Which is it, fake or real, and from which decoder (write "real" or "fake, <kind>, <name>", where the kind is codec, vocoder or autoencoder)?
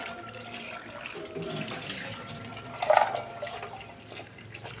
real